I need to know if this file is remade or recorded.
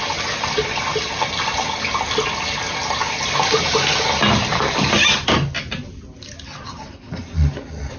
recorded